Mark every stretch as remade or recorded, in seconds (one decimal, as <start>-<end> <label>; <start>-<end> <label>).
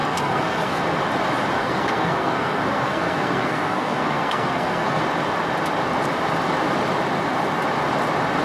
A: 0.0-0.8 remade; 0.8-1.6 recorded; 1.6-5.0 remade; 5.0-8.4 recorded